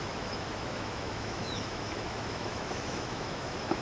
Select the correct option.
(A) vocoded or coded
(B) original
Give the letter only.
A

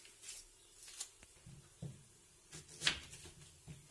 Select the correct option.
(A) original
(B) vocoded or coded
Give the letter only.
A